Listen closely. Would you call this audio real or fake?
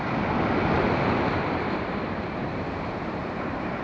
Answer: real